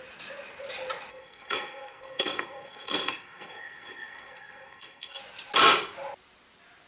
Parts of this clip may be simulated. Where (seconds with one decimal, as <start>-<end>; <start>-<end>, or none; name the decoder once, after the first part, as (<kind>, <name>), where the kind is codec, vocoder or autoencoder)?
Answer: 1.1-5.2 (codec, SNAC)

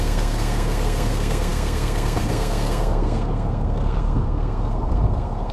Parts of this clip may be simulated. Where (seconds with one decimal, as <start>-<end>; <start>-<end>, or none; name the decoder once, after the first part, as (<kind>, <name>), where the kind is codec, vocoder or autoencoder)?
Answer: 0.0-5.5 (codec, SNAC)

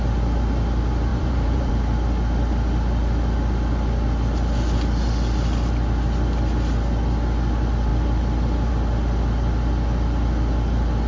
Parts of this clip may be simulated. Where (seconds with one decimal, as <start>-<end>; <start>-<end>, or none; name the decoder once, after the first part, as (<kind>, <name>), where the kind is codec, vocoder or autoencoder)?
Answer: 1.1-1.7 (vocoder, BigVGAN v2)

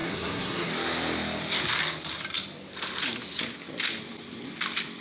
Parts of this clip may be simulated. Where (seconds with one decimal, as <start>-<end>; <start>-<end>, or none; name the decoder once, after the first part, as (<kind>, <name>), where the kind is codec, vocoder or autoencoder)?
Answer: 0.0-0.7 (codec, SNAC)

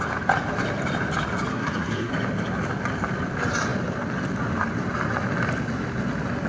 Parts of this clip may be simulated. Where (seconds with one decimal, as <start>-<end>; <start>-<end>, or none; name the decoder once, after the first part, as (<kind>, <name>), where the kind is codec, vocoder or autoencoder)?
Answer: 1.5-2.1 (codec, SNAC)